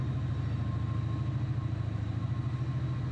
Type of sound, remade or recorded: recorded